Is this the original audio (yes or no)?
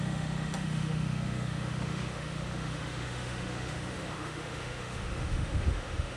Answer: no